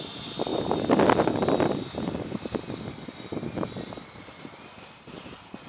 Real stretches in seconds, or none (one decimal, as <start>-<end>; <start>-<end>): 0.0-0.5; 3.8-5.7